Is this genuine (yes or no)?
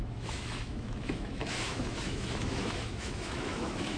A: no